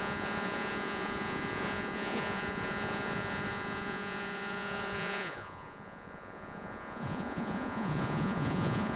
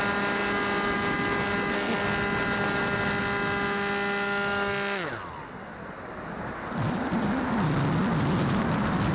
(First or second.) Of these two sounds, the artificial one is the first